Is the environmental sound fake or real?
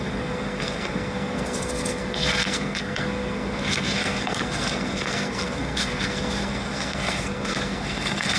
fake